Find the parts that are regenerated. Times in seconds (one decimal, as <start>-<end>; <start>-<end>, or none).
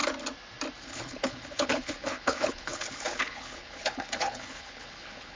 0.8-5.4